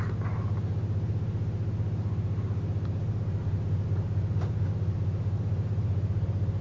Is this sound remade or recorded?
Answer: recorded